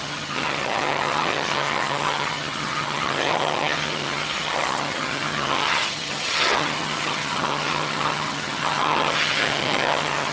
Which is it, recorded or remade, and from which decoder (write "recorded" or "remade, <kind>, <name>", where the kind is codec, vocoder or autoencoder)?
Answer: remade, vocoder, HiFi-GAN